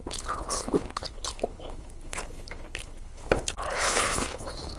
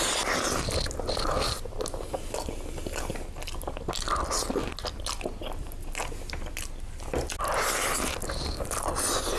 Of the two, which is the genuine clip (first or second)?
second